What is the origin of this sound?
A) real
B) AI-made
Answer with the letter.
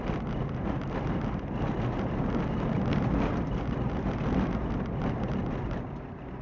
A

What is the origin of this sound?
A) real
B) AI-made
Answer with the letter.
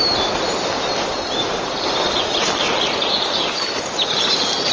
A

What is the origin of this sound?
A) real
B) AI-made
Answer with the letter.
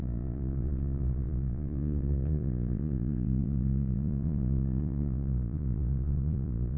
B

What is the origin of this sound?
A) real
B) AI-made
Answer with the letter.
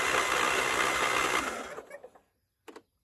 A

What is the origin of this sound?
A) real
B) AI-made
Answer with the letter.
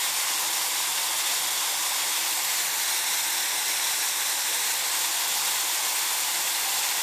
A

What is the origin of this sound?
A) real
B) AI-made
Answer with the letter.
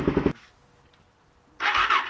A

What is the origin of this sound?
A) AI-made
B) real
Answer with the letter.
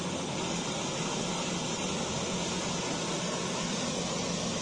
B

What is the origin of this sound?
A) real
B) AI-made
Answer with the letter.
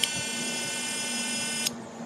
B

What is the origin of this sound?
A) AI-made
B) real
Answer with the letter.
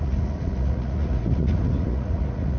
A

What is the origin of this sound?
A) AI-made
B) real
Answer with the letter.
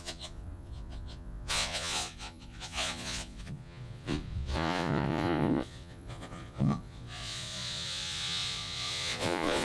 A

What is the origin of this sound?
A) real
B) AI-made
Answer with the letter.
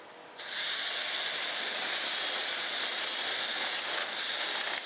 A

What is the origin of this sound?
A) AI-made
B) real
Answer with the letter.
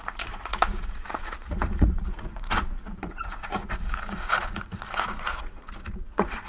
A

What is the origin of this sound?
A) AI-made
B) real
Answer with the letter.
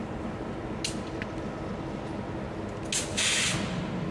B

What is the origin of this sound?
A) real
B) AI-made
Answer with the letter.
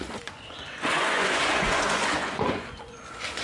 B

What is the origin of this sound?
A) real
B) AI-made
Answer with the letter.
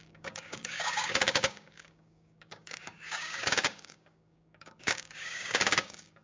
B